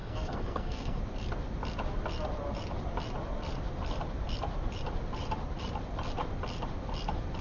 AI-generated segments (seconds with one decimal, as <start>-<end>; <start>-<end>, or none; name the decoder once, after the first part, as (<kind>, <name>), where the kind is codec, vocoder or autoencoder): 0.0-1.0 (codec, SNAC)